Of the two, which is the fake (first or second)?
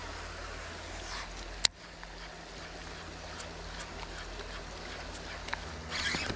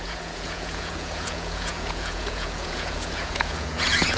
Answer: second